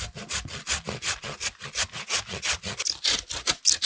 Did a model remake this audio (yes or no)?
no